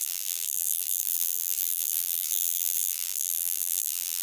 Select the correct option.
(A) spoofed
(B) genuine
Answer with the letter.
A